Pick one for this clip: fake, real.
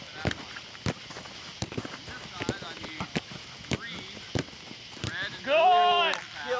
real